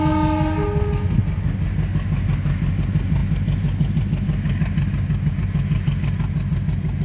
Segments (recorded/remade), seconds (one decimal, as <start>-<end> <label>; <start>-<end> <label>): 0.0-7.0 recorded